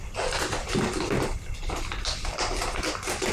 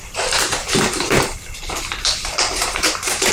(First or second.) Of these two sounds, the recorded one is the first